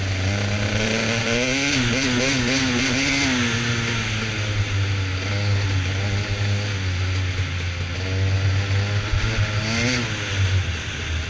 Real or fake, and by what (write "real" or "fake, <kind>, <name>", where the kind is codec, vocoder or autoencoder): real